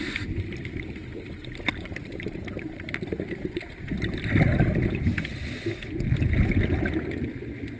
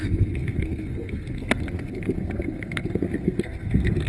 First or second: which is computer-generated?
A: second